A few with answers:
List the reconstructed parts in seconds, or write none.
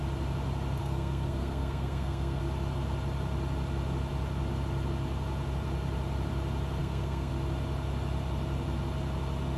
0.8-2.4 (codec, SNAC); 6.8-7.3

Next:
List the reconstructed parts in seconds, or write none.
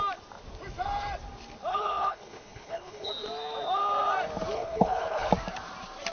1.7-3.1 (codec, HILCodec); 4.5-5.3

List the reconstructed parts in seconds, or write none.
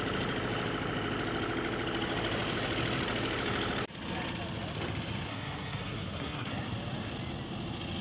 5.3-6.5 (codec, SNAC)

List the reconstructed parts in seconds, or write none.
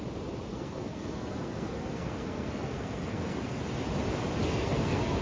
0.5-3.6 (codec, SNAC); 4.4-5.2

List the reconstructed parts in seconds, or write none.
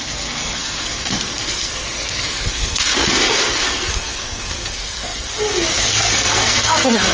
0.0-7.1 (codec, SNAC)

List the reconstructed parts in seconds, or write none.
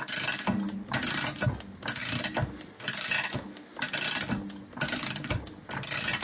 none